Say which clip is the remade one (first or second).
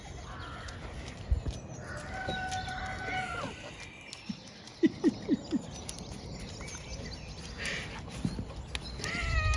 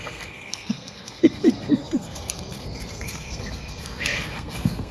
second